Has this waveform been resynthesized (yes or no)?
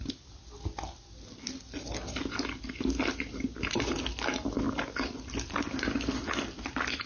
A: no